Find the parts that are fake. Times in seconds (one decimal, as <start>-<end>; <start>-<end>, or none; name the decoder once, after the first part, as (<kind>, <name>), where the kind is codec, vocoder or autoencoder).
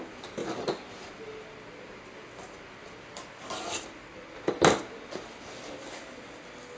0.4-2.2 (vocoder, BigVGAN v2); 2.8-3.6